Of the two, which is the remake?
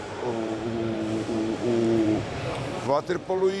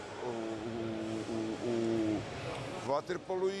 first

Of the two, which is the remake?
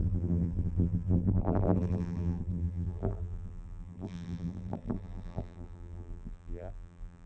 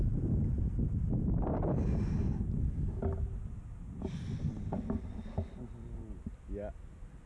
first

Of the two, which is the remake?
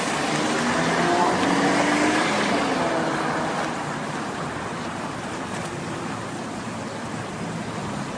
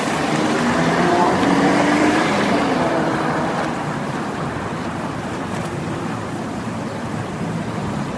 second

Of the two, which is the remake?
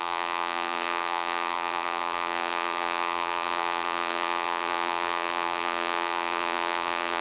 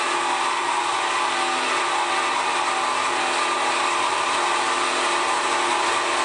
first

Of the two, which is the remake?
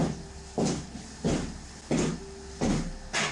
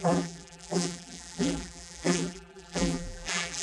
second